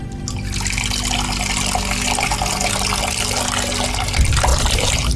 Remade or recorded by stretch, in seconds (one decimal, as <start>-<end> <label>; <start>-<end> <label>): 0.0-4.5 recorded; 4.5-5.2 remade